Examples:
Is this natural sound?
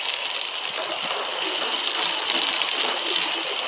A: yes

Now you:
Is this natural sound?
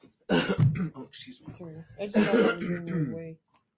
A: yes